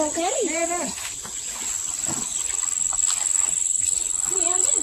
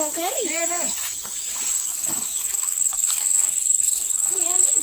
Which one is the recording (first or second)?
first